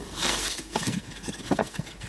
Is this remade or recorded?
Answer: remade